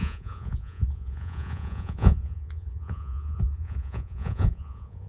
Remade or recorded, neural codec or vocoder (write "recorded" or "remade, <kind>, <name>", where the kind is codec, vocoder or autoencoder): remade, vocoder, Vocos